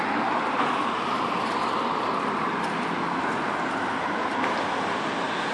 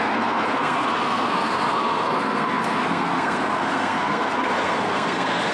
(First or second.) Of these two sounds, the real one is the first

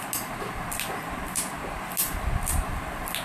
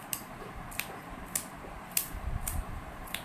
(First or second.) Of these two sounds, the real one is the first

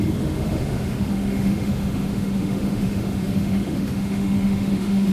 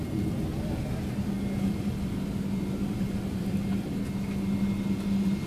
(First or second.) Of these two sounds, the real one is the second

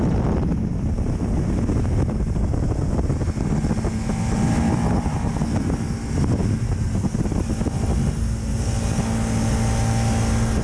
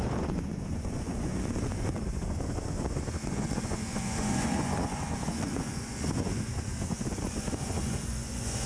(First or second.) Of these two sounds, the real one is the first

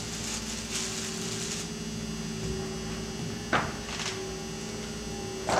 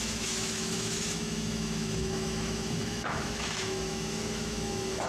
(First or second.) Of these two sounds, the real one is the first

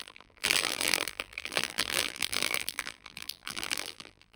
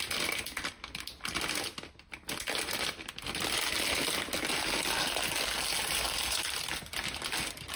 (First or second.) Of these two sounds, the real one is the second